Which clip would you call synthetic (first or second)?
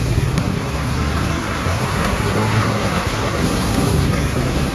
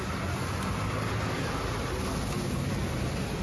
first